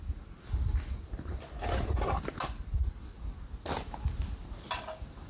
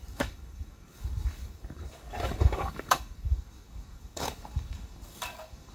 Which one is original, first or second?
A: first